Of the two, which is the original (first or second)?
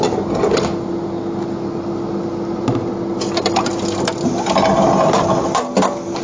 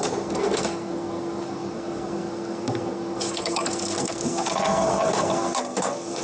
first